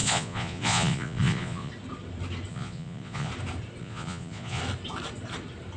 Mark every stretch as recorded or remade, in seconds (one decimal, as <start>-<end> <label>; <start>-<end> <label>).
0.0-1.7 remade; 1.7-2.5 recorded; 2.5-3.3 remade; 3.3-3.8 recorded; 3.8-4.6 remade; 4.6-5.8 recorded